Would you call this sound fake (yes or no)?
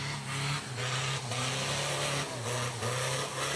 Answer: no